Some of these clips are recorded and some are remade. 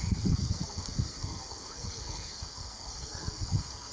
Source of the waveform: remade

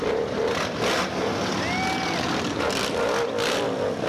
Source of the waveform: recorded